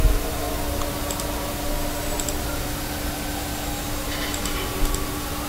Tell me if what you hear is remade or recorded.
recorded